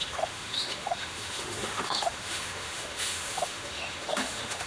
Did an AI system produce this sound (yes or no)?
yes